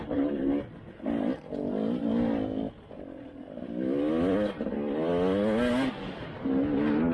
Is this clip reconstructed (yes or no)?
no